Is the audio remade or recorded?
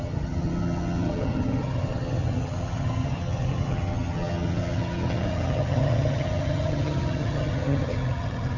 remade